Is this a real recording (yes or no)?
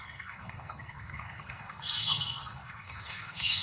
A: no